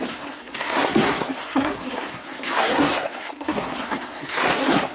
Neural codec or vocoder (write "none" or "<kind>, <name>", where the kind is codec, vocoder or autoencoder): codec, SNAC